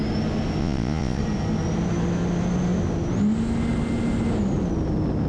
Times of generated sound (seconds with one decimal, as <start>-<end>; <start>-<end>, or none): 0.6-1.2